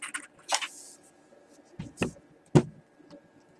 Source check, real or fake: real